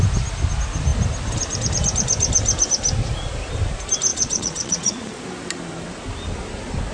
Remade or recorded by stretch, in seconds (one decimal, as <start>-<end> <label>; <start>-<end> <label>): 0.0-4.1 recorded; 4.1-5.2 remade; 5.2-6.9 recorded